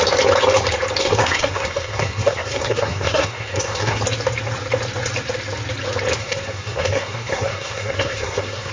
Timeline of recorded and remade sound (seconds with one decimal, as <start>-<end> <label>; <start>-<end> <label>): 0.0-1.0 recorded; 1.0-4.0 remade; 4.0-6.2 recorded; 6.2-8.7 remade